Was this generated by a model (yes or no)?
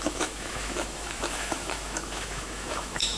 yes